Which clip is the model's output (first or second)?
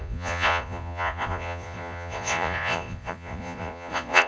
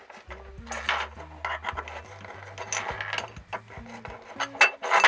first